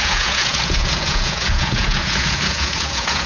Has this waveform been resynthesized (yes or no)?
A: yes